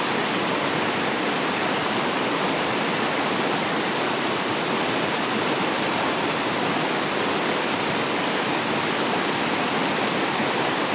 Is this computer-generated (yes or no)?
no